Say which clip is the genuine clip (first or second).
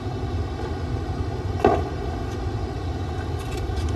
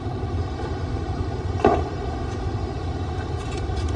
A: first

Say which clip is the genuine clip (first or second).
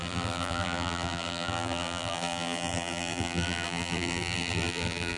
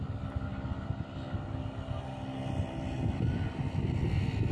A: second